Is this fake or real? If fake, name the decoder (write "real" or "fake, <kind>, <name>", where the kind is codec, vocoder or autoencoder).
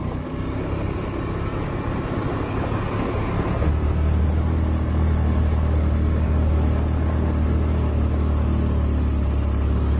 real